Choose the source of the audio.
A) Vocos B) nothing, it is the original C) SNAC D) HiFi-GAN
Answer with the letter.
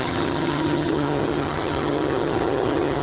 D